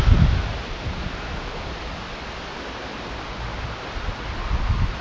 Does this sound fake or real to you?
real